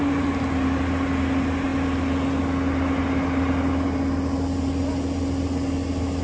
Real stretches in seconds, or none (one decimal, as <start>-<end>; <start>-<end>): 0.0-6.2